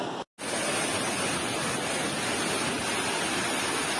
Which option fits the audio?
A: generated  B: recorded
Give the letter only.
B